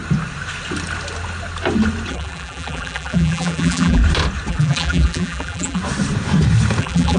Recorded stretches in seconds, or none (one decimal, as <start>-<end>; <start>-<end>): 0.0-2.1; 4.0-4.5; 5.8-6.8